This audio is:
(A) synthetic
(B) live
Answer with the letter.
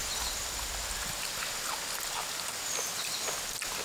B